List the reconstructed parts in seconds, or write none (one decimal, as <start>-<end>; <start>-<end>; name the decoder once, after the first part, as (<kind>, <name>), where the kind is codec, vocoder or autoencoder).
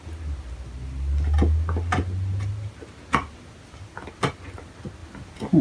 none